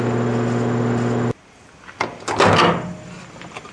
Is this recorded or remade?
recorded